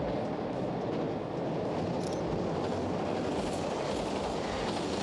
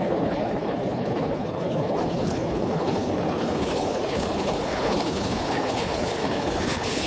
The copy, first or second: second